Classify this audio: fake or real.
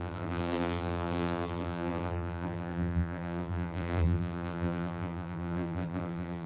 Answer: fake